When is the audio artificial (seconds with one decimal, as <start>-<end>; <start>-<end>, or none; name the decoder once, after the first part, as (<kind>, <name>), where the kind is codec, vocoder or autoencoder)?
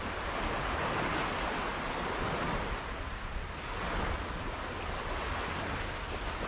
none